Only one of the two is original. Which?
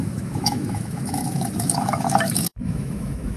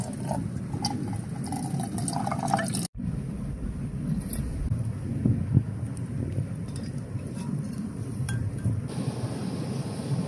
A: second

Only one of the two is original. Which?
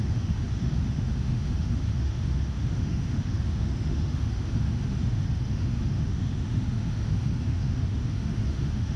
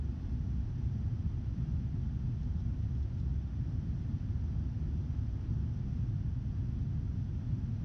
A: second